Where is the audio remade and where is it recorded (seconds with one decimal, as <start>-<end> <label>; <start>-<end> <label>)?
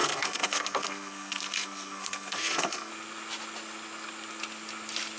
0.0-2.9 remade; 2.9-5.2 recorded